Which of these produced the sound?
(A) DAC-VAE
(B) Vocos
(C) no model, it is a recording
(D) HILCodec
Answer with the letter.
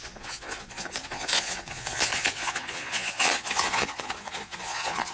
B